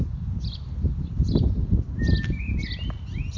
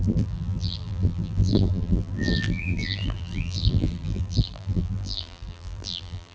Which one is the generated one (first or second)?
second